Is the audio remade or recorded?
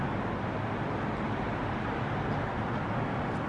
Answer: recorded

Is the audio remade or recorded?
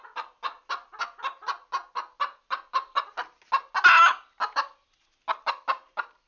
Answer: recorded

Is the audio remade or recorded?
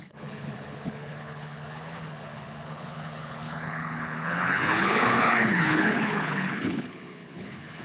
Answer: remade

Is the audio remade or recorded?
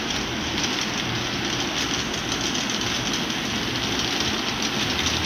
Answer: recorded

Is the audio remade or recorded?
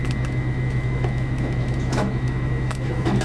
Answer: remade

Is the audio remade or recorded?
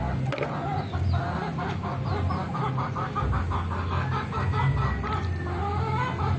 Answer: recorded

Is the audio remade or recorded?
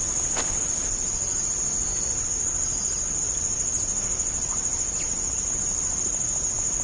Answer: recorded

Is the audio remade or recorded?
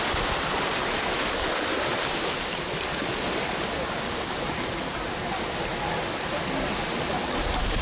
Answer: recorded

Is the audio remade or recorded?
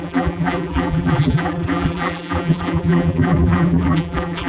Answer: remade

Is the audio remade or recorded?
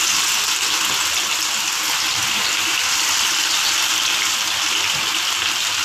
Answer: recorded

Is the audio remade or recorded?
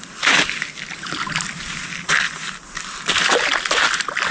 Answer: remade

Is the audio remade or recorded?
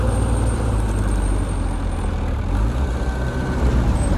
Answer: remade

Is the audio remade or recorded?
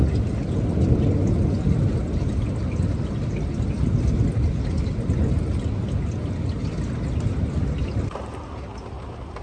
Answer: recorded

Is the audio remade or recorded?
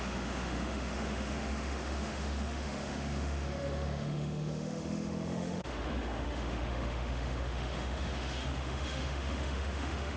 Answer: remade